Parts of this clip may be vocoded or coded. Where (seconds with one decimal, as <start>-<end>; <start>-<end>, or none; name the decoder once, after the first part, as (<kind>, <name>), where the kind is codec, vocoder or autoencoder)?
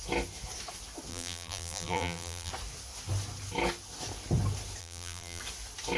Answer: 1.1-2.5 (vocoder, BigVGAN v2); 4.8-5.4